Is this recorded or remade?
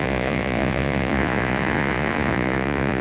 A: remade